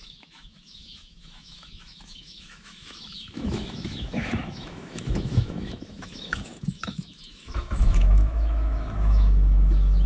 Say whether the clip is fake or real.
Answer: fake